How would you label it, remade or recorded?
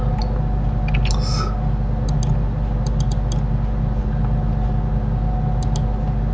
recorded